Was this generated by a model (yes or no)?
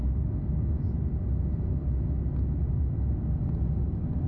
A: no